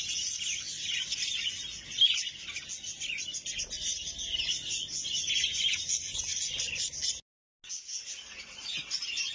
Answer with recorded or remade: recorded